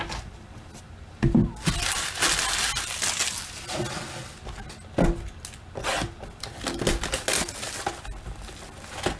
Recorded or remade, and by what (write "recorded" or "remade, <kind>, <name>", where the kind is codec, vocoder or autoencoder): recorded